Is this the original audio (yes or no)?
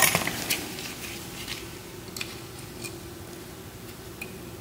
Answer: yes